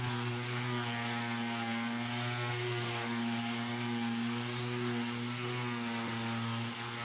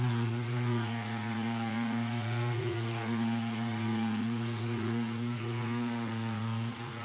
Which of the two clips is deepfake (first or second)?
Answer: second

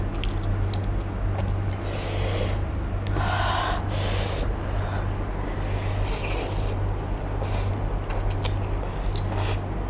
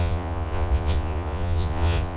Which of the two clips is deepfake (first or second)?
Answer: second